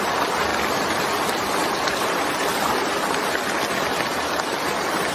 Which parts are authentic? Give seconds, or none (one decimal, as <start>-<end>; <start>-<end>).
0.0-0.5; 3.6-4.1